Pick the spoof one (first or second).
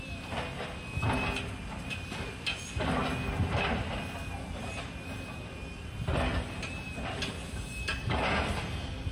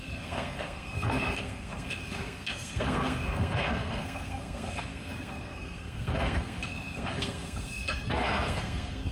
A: second